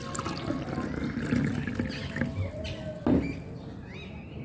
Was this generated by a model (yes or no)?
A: no